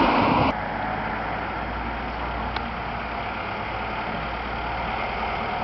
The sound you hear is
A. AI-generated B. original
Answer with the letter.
B